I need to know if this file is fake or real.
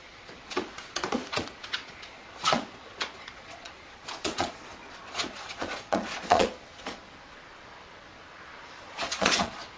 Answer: fake